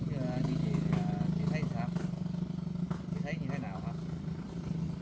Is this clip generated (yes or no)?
no